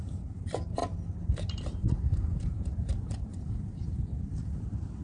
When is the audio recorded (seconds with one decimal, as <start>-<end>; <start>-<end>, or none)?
none